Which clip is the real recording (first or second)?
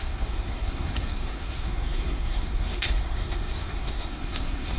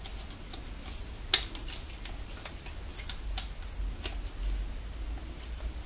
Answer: second